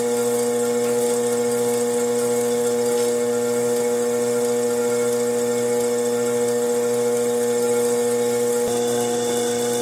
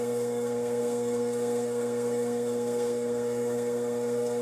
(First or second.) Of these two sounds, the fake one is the second